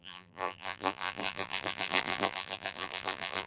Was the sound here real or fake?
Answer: fake